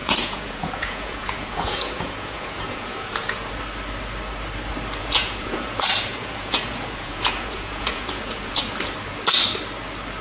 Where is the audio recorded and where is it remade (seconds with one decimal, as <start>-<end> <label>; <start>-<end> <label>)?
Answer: 0.0-3.5 remade; 3.5-5.0 recorded; 5.0-8.6 remade; 8.6-10.2 recorded